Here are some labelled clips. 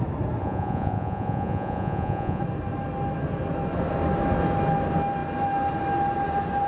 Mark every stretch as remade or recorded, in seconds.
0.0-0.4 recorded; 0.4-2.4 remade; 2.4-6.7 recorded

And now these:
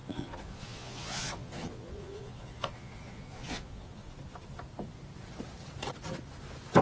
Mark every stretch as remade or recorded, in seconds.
0.0-4.1 remade; 4.1-6.8 recorded

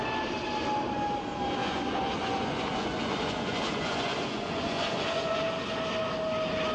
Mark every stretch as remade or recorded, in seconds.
0.0-1.6 recorded; 1.6-5.4 remade; 5.4-6.7 recorded

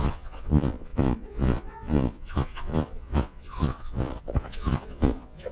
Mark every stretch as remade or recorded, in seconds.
0.0-5.5 remade